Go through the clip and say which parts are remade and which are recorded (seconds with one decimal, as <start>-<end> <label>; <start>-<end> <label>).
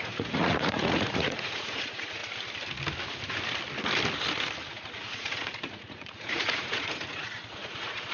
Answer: 0.0-2.2 remade; 2.2-4.7 recorded; 4.7-8.1 remade